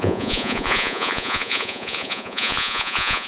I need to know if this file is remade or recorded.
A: remade